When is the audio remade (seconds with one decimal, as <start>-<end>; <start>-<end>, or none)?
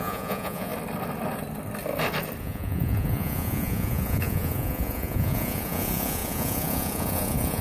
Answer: 0.0-0.7; 2.4-7.6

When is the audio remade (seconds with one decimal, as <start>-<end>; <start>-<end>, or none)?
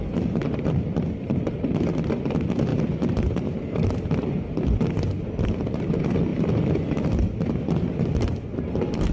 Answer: 2.7-4.7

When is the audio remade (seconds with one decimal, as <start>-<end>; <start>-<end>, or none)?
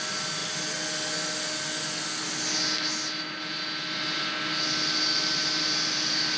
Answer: none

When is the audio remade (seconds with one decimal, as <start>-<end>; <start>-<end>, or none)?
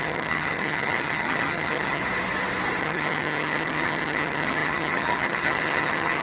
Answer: 0.0-2.0; 2.8-6.2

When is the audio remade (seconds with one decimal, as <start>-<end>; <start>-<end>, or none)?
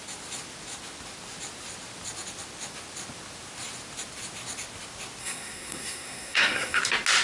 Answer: 5.2-6.8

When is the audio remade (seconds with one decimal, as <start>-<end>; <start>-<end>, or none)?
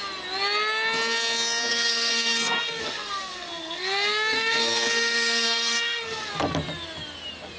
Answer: 1.7-6.3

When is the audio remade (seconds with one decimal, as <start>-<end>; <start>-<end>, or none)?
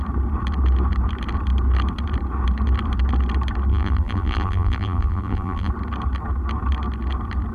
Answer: 3.7-5.7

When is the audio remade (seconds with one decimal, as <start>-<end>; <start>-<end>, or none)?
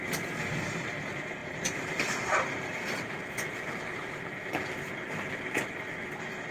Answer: 1.4-5.3